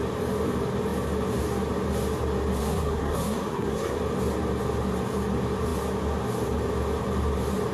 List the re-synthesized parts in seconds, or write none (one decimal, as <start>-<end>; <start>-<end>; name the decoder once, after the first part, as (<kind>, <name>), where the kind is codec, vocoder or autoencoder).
2.6-4.0 (codec, SNAC)